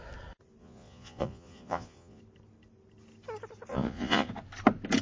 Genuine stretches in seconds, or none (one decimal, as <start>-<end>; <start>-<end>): 0.0-0.6; 2.2-3.7; 4.3-5.0